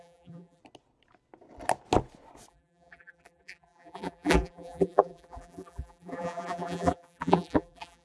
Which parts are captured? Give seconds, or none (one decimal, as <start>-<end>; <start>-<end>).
0.6-2.5